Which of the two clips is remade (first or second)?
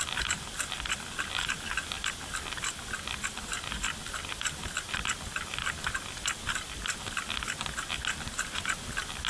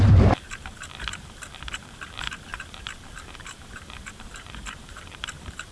second